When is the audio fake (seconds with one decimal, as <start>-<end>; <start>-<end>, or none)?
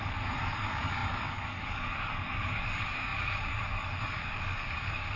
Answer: 0.0-5.2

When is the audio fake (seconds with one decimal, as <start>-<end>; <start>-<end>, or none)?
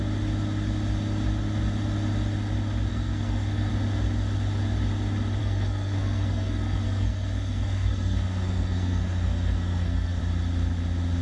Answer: 2.9-3.7; 5.4-10.2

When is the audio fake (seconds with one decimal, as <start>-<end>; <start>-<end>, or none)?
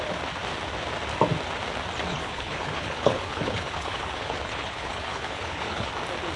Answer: 2.1-5.9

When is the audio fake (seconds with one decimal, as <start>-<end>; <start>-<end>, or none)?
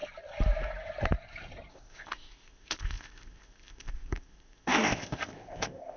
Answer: 1.7-6.0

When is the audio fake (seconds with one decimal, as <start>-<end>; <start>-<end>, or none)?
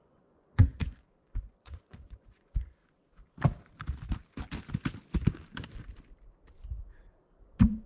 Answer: 0.0-2.8; 7.5-7.9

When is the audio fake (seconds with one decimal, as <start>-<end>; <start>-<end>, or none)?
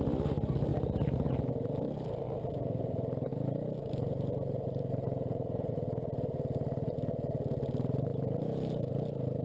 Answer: 0.7-1.5; 3.3-5.7; 8.1-8.9